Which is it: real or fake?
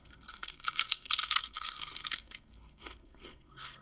fake